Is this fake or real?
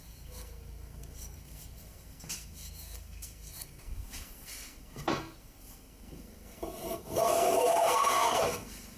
fake